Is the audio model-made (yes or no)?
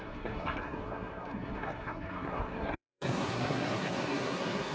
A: yes